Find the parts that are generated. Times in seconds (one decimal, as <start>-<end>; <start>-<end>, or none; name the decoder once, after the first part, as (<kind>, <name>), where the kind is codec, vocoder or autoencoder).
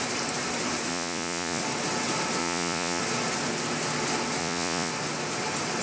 0.9-1.6 (vocoder, Vocos); 2.4-3.0; 4.4-4.9